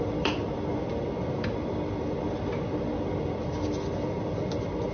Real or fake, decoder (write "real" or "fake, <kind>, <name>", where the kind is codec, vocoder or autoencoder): real